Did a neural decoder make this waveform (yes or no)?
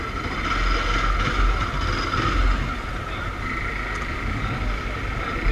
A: no